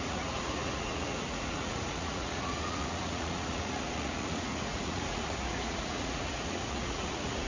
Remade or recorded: remade